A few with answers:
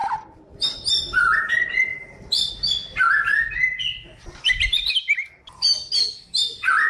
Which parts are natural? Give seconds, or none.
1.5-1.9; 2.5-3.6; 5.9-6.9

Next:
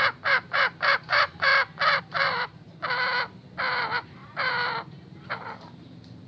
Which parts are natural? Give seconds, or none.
1.5-2.0; 2.8-3.8

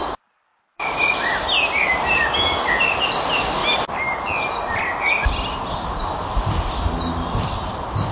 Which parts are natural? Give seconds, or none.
0.0-8.1

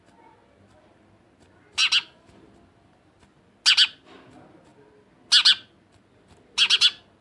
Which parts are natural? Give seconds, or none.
0.0-7.2

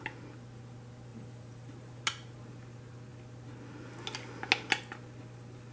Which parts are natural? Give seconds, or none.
0.0-1.1; 2.0-5.7

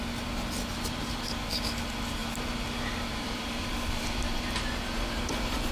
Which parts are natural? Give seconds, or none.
0.0-0.7; 1.8-2.2

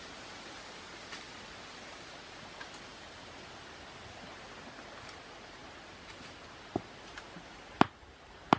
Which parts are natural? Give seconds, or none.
0.0-2.9; 4.2-5.6; 7.5-8.6

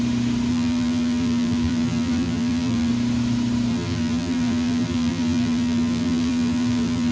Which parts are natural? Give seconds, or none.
0.0-0.5; 2.9-3.7